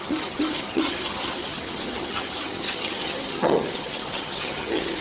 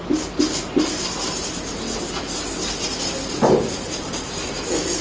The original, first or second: second